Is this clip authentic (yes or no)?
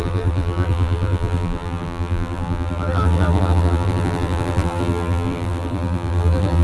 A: no